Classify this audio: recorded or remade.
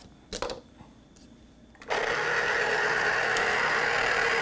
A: recorded